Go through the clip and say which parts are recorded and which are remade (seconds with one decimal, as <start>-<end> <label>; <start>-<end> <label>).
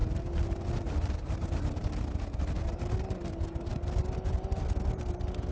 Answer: 0.0-5.5 recorded